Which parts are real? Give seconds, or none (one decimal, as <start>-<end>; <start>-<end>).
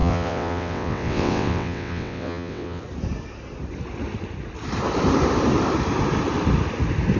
2.8-7.2